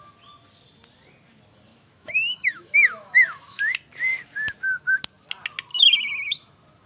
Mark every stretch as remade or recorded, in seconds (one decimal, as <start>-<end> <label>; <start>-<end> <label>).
0.0-1.7 recorded; 1.7-3.6 remade; 3.6-5.7 recorded; 5.7-6.5 remade; 6.5-6.9 recorded